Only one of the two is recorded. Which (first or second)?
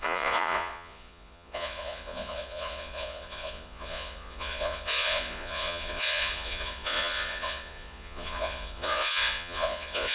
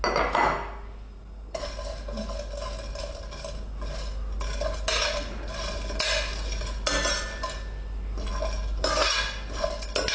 second